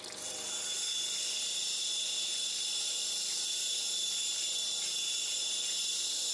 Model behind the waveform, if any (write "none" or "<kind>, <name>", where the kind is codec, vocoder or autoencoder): none